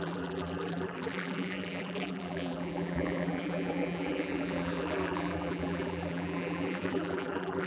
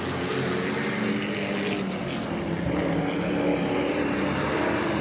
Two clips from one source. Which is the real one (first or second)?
second